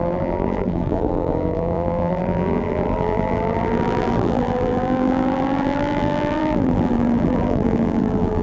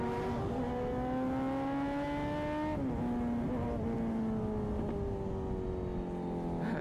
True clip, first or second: second